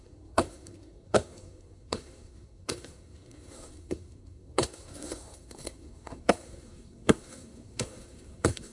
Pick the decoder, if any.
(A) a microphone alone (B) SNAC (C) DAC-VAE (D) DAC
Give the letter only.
B